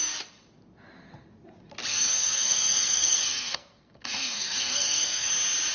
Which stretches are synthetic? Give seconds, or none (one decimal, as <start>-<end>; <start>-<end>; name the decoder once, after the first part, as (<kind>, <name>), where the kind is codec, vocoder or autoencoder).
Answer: 1.9-5.3 (codec, SNAC)